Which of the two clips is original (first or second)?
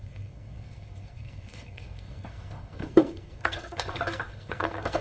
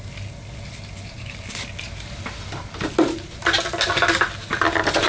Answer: second